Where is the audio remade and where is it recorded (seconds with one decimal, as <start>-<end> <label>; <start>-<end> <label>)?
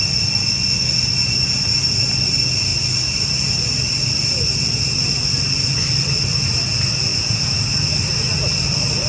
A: 0.0-7.1 recorded; 7.1-7.6 remade; 7.6-9.1 recorded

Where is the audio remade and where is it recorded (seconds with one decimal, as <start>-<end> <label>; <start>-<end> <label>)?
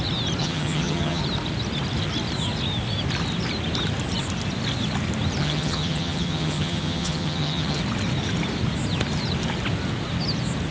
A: 0.0-0.4 recorded; 0.4-1.2 remade; 1.2-5.4 recorded; 5.4-7.8 remade; 7.8-10.7 recorded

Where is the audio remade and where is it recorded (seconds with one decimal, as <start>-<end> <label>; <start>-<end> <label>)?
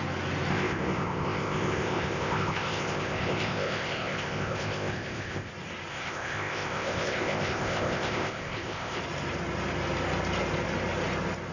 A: 0.0-0.5 recorded; 0.5-5.5 remade; 5.5-5.9 recorded; 5.9-9.0 remade; 9.0-11.5 recorded